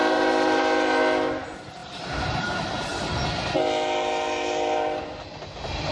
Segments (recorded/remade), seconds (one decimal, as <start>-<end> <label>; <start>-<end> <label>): 0.0-0.6 remade; 0.6-1.8 recorded; 1.8-2.4 remade; 2.4-5.9 recorded